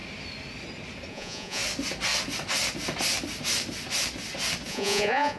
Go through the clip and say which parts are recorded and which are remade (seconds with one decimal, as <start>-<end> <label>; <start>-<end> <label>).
0.0-1.1 recorded; 1.1-1.6 remade; 1.6-4.7 recorded; 4.7-5.4 remade